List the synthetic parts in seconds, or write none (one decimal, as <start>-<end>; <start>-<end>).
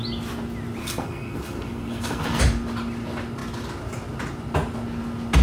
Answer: 0.8-2.4